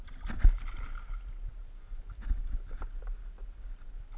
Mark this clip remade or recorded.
recorded